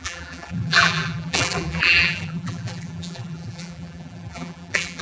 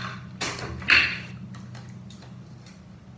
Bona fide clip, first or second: second